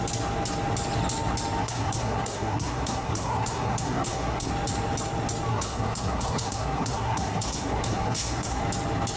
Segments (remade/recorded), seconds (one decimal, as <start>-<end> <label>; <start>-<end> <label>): 0.0-1.6 recorded; 1.6-4.5 remade; 4.5-5.5 recorded; 5.5-8.6 remade; 8.6-9.2 recorded